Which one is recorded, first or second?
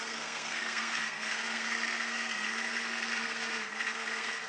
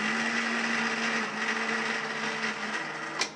second